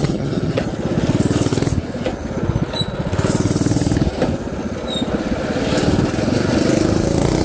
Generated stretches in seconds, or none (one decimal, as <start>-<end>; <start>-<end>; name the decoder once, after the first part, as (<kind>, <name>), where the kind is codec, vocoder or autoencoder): 0.0-0.6 (vocoder, HiFi-GAN)